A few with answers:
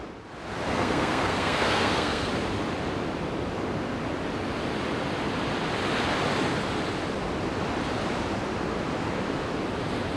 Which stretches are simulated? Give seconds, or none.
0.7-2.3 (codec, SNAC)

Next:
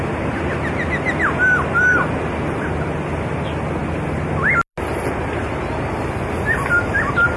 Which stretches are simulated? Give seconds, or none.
none

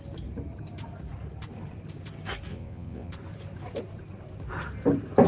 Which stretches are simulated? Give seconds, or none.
2.5-3.1 (vocoder, WaveNeXt)

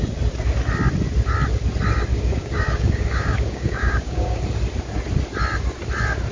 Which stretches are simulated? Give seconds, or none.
2.1-4.4 (codec, DAC)

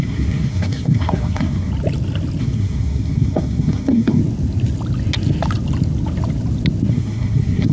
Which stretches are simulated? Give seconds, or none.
0.0-1.7 (codec, SNAC); 2.4-4.2; 6.9-7.7

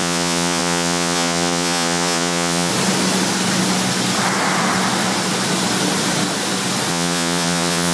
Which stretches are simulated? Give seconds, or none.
0.0-2.7 (vocoder, Vocos); 6.9-7.9

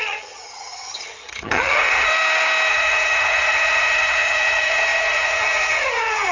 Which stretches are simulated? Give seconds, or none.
0.0-2.1 (vocoder, HiFi-GAN); 2.7-6.3